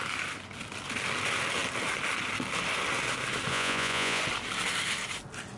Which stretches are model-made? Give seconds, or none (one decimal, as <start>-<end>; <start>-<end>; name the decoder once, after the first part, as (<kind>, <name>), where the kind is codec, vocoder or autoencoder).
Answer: 3.5-4.2 (vocoder, Vocos)